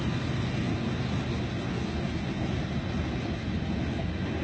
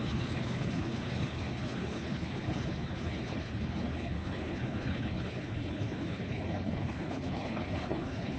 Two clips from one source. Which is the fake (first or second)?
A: second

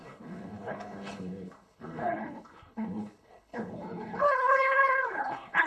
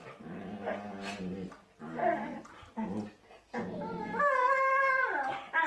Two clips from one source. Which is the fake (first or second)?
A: first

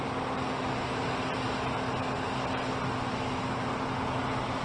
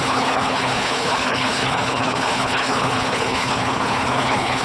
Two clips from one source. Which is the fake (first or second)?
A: second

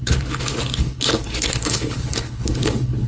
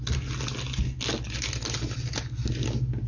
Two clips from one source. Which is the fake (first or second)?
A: first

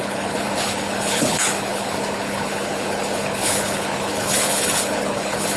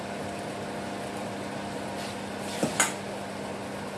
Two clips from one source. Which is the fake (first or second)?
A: first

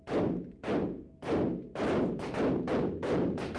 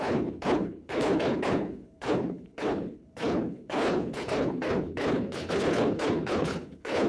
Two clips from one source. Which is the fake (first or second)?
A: second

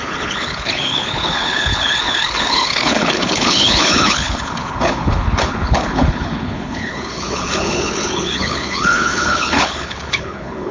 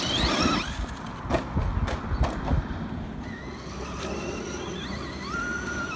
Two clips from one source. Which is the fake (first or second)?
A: first